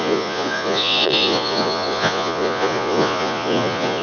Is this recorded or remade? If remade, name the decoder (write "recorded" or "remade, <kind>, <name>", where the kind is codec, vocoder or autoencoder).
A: remade, vocoder, Vocos